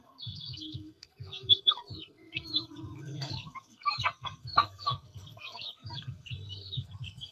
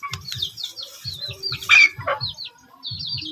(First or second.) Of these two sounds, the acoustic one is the second